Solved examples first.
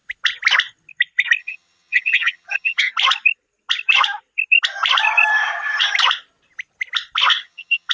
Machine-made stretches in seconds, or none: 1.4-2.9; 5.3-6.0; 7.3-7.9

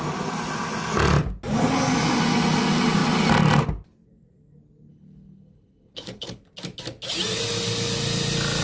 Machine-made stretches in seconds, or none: 4.9-6.4